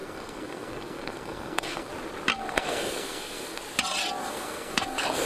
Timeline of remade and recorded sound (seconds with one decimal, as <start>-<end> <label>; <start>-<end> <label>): 0.0-1.9 remade; 1.9-2.3 recorded; 2.3-3.6 remade; 3.6-4.2 recorded; 4.2-5.3 remade